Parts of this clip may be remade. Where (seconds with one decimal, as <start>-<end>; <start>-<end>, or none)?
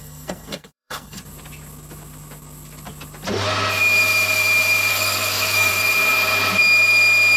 0.0-1.2; 4.9-5.7